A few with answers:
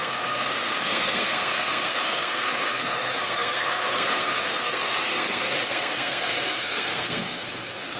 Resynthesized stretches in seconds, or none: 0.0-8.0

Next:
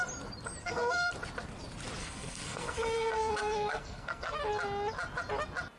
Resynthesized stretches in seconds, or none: 0.6-1.1; 2.0-4.4

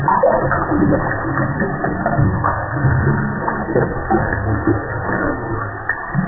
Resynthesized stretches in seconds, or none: 1.9-5.7

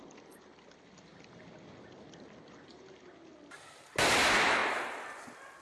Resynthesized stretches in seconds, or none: none

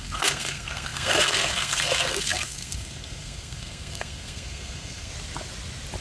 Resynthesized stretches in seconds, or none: 0.0-5.1

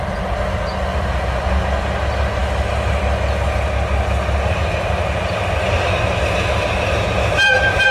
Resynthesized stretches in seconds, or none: none

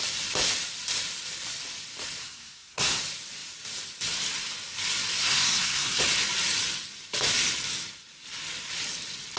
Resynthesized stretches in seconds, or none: 2.2-3.0; 5.2-6.0